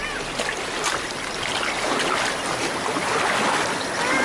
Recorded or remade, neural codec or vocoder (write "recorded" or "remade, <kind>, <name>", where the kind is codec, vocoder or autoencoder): recorded